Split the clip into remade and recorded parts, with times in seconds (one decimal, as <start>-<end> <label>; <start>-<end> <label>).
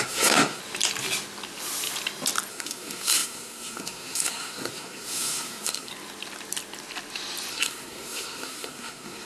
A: 0.0-0.6 remade; 0.6-2.5 recorded; 2.5-5.9 remade; 5.9-7.5 recorded; 7.5-9.3 remade